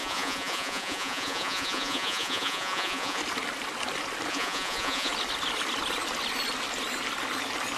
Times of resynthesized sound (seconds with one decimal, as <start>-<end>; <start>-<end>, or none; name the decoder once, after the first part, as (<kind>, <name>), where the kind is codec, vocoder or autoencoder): 0.0-3.2 (vocoder, Vocos); 4.3-5.1